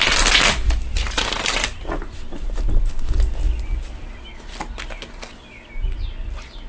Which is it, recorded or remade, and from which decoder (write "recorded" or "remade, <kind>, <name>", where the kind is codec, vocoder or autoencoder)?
recorded